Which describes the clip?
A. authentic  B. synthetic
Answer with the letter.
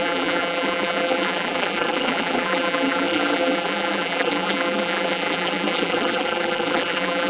B